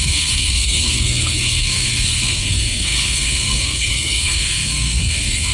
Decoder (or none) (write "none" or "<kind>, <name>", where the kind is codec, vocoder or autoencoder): codec, SNAC